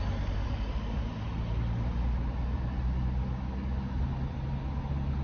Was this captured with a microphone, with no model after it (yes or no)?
yes